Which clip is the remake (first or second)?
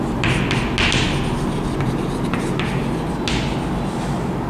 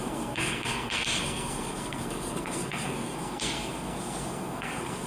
second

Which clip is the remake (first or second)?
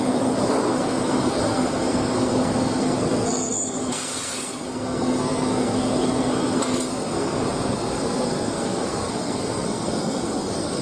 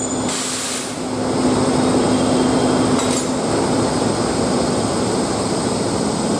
first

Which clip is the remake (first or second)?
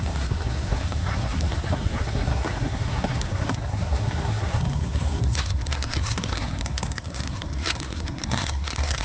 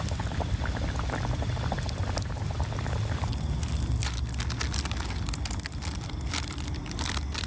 first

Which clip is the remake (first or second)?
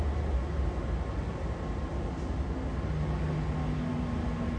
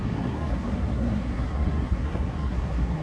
second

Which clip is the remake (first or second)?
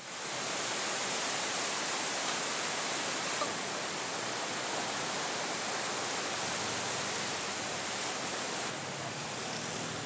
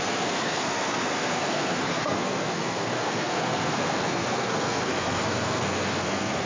second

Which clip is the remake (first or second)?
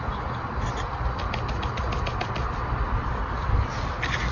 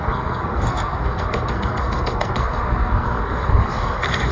second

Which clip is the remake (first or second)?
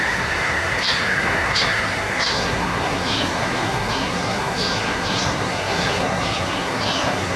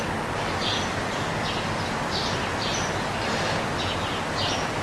first